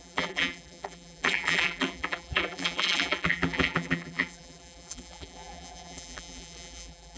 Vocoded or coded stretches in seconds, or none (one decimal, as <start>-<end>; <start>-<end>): 0.0-7.2

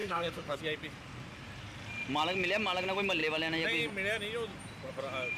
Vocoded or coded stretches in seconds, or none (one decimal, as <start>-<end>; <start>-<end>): 0.0-0.6

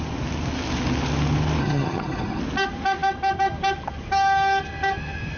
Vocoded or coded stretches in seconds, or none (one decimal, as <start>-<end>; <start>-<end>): 1.6-2.4